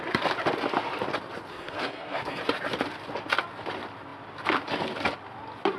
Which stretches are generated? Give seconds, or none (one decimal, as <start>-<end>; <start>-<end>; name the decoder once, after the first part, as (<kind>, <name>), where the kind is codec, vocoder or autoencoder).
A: 1.5-2.4 (codec, SNAC)